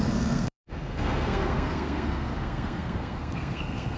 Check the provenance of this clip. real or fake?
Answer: fake